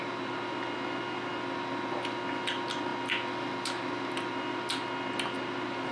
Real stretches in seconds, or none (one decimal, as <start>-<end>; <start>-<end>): 0.0-5.9